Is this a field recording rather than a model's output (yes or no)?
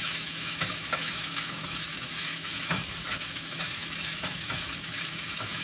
no